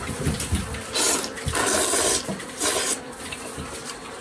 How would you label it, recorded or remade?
recorded